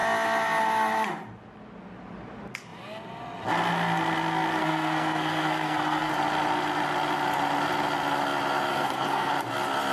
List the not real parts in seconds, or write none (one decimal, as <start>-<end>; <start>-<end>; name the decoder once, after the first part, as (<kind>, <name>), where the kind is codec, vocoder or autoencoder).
4.6-6.1 (codec, SNAC); 8.7-9.3